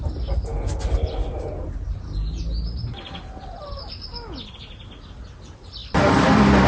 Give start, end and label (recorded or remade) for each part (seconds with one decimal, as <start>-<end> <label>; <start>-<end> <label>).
0.0-6.7 recorded